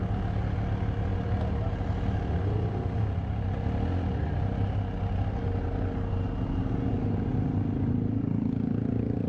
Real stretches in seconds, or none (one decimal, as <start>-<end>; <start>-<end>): 0.0-9.3